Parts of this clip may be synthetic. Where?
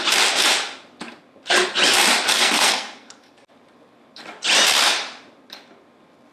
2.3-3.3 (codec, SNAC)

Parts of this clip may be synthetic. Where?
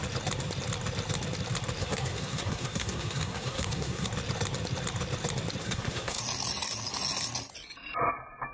1.8-4.1 (codec, SNAC); 5.6-6.2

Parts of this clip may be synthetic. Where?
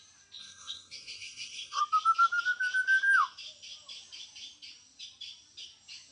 0.4-1.8 (codec, SNAC)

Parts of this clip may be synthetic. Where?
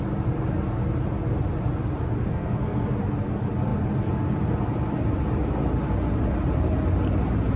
2.3-2.9 (codec, SNAC)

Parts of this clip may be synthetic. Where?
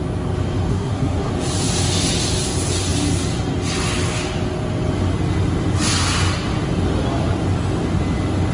0.7-1.3 (codec, SNAC)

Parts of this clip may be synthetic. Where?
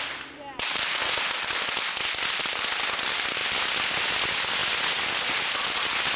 none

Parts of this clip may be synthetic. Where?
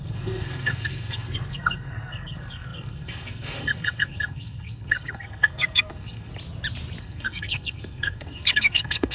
0.0-6.3 (codec, SNAC); 7.0-9.1